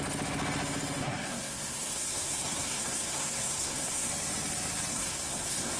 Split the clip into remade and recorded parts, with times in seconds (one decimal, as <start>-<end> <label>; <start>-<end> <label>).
0.0-1.0 recorded; 1.0-4.1 remade; 4.1-4.9 recorded; 4.9-5.8 remade